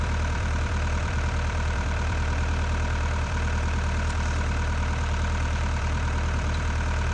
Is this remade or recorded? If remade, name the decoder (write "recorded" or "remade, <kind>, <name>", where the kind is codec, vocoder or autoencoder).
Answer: remade, vocoder, BigVGAN v2